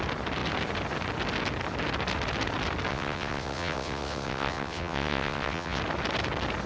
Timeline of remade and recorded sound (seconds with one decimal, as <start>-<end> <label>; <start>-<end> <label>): 0.0-2.9 recorded; 2.9-5.8 remade; 5.8-6.7 recorded

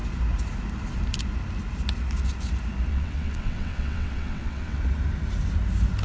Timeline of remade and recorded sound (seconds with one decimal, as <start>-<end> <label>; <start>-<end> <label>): 0.0-2.9 recorded; 2.9-4.8 remade; 4.8-6.0 recorded

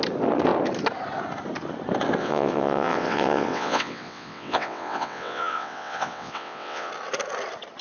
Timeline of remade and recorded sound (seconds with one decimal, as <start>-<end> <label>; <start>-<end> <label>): 0.0-2.2 recorded; 2.2-6.9 remade; 6.9-7.8 recorded

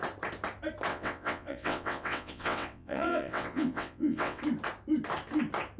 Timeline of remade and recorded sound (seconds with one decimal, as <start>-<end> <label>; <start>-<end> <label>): 0.0-0.9 recorded; 0.9-4.4 remade; 4.4-5.8 recorded

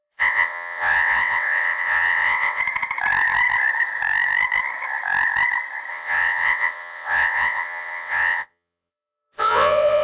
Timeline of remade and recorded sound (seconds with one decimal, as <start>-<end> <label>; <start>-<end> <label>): 0.0-2.6 remade; 2.6-5.9 recorded; 5.9-10.0 remade

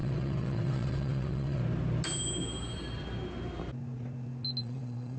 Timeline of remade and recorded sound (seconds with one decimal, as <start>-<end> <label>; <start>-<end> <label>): 0.0-1.6 remade; 1.6-4.6 recorded; 4.6-5.2 remade